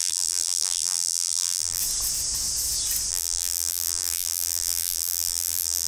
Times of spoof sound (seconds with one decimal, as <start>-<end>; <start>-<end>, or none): 0.0-1.8; 3.1-5.9